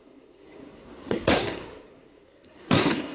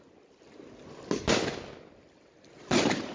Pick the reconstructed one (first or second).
first